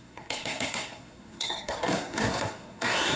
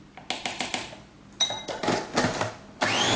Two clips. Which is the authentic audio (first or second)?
second